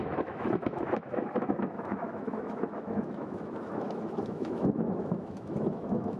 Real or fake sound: fake